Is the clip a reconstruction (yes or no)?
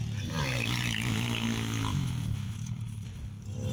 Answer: no